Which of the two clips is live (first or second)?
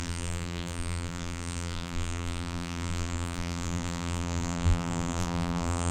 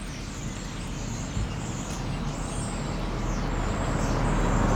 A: second